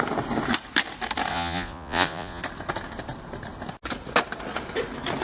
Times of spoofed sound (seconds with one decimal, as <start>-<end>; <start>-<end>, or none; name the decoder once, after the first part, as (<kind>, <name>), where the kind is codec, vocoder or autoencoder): 1.3-2.4 (vocoder, Vocos)